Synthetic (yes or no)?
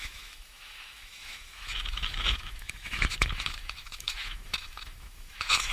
yes